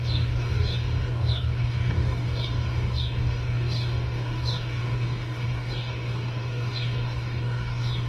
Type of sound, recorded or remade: remade